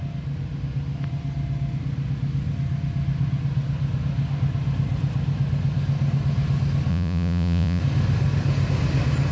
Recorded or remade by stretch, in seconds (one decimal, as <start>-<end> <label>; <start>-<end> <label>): 0.0-6.9 recorded; 6.9-7.8 remade; 7.8-9.3 recorded

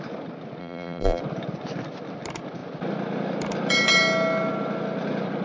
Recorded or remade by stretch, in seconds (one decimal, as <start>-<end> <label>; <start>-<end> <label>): 0.0-0.6 recorded; 0.6-1.2 remade; 1.2-5.4 recorded

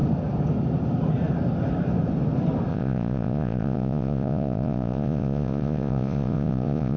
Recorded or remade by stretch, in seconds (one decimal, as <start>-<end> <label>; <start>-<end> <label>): 0.0-2.7 recorded; 2.7-7.0 remade

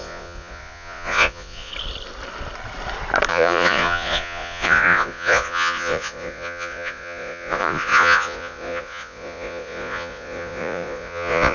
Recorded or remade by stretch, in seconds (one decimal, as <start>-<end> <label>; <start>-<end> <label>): 0.0-1.7 remade; 1.7-3.3 recorded; 3.3-11.5 remade

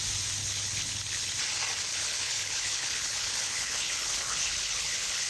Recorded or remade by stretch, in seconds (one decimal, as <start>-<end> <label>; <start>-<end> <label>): 0.0-0.4 recorded; 0.4-1.3 remade; 1.3-1.9 recorded; 1.9-5.3 remade